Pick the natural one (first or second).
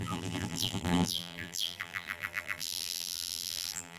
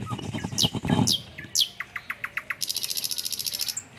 second